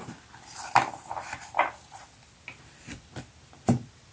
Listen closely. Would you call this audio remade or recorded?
recorded